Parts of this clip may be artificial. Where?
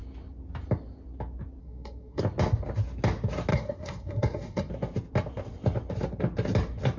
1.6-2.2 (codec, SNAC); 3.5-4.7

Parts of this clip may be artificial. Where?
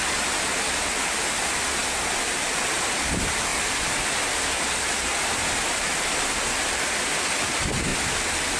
7.9-8.6 (vocoder, BigVGAN v2)